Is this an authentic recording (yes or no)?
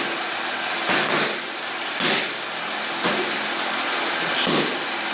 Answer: yes